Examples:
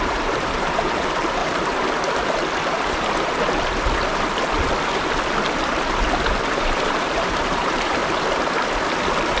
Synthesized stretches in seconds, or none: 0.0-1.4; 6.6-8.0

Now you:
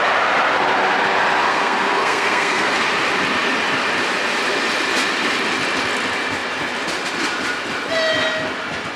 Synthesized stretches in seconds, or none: 1.5-2.7

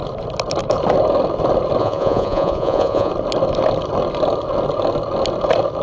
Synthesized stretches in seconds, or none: 1.8-3.1

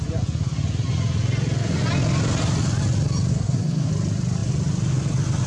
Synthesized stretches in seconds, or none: 3.3-3.9

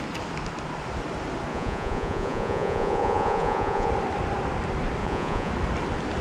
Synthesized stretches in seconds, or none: 1.5-3.9; 5.0-5.5

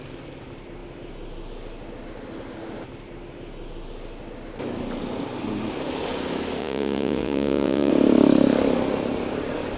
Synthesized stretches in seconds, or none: 6.6-7.9

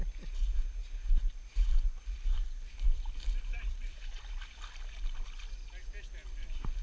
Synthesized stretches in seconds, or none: 0.8-4.2